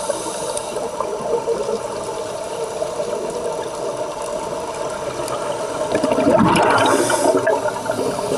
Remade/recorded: recorded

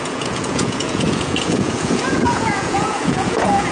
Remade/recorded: remade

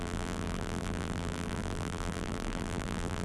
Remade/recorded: remade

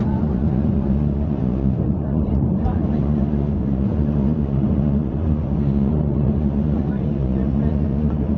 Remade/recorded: remade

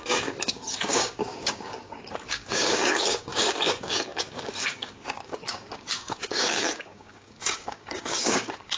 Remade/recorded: remade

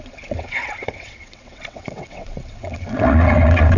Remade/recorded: remade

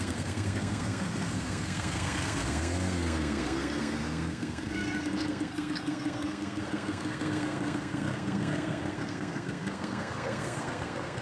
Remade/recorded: remade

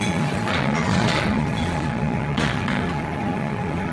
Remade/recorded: remade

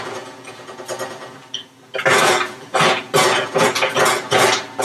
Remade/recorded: recorded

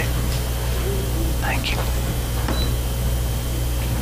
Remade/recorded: recorded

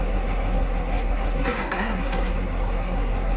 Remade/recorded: remade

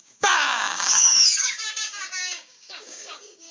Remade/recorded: remade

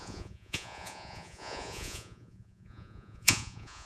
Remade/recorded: remade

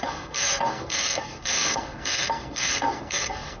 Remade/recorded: remade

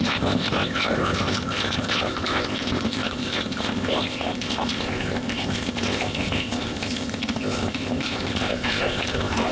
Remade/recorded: remade